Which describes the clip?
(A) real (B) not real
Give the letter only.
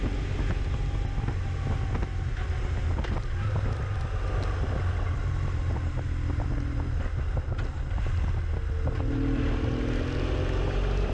A